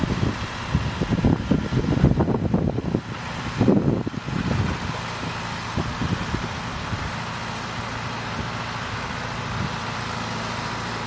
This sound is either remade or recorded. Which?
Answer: recorded